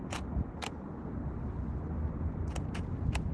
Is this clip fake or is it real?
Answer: real